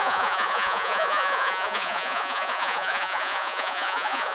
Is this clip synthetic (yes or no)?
yes